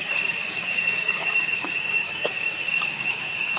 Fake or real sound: fake